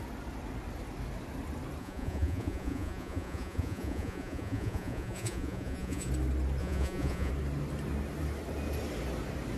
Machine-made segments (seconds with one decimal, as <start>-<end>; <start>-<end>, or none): 1.8-6.1; 6.6-7.3